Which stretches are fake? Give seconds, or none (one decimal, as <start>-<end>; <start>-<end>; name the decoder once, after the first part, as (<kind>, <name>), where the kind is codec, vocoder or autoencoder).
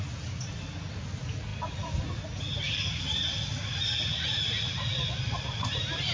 none